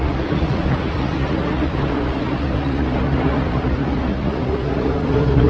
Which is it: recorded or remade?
remade